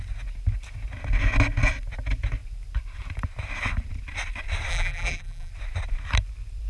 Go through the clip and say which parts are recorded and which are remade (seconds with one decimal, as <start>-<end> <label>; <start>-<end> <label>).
0.0-4.7 recorded; 4.7-5.5 remade; 5.5-6.7 recorded